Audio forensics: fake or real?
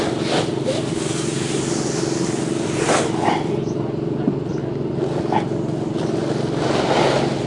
real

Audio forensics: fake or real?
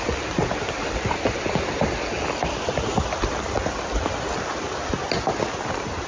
real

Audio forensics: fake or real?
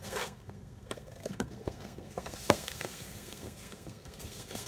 fake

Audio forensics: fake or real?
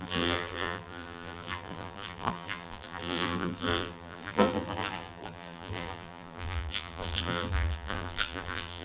fake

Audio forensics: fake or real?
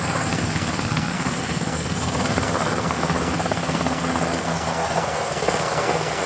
fake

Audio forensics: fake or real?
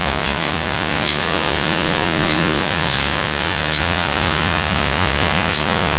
fake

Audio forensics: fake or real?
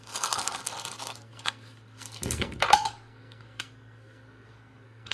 fake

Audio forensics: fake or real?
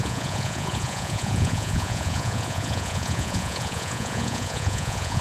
fake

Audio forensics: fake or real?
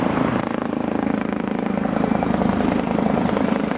fake